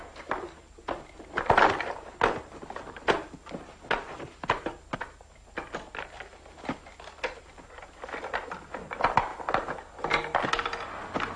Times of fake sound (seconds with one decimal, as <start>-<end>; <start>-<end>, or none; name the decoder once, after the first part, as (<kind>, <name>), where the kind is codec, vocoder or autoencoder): none